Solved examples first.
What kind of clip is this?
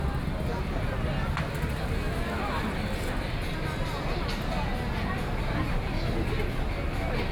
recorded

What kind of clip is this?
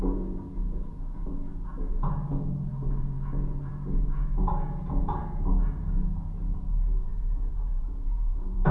remade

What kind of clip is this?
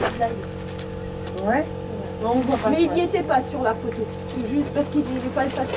recorded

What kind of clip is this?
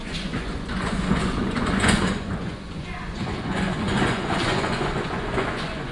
remade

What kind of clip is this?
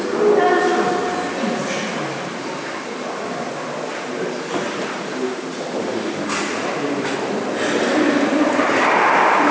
recorded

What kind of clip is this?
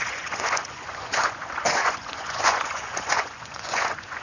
remade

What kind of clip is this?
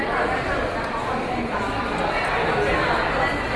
recorded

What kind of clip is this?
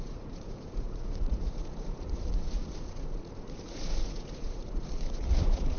remade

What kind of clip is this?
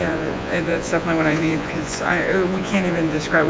remade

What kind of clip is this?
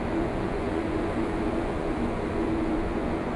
remade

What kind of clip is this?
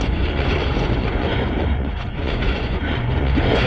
remade